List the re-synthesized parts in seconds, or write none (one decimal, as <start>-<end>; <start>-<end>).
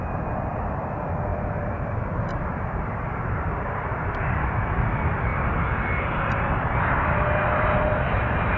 0.0-5.3; 6.8-8.6